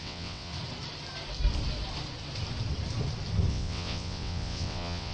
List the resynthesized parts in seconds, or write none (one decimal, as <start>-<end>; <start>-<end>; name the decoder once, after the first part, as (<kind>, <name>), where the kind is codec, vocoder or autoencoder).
0.0-0.5 (vocoder, WaveNeXt); 3.5-5.1